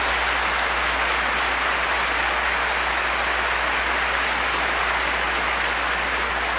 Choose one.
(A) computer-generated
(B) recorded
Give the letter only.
B